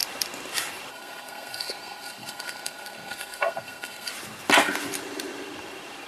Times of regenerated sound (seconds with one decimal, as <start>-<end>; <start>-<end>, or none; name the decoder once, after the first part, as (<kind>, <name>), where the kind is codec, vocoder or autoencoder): 0.9-4.1 (codec, SNAC)